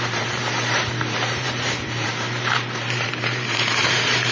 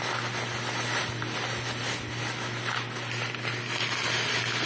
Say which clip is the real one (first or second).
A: second